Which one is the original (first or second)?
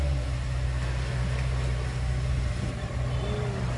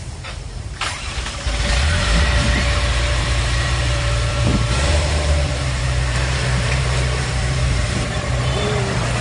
first